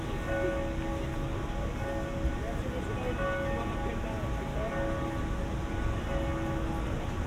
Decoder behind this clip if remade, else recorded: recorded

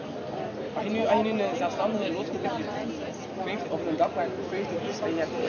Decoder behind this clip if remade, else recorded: recorded